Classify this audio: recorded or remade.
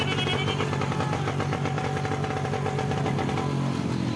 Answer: recorded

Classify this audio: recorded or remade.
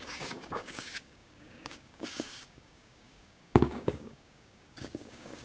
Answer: remade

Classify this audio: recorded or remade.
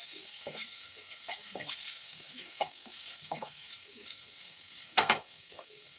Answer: remade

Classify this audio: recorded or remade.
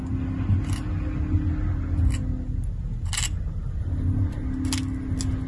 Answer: recorded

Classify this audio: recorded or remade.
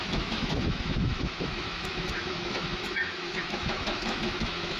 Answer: remade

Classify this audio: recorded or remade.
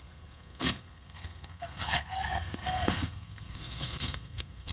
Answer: remade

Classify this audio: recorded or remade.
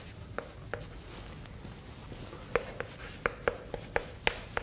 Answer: recorded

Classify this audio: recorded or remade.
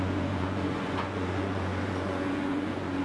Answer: remade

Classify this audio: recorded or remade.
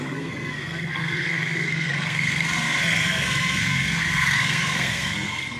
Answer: remade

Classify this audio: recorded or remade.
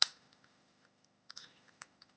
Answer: remade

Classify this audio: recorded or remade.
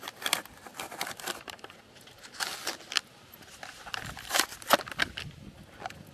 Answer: recorded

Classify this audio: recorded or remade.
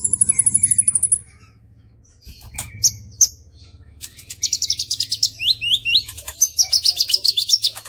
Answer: remade